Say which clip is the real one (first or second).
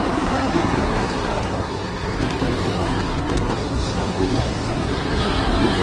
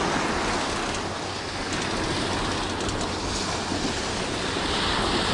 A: second